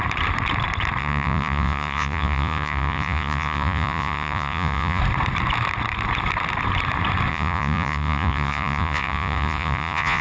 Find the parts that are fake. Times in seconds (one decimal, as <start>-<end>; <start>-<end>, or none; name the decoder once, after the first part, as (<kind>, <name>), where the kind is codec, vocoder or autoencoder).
1.0-5.0 (vocoder, Vocos); 7.3-10.2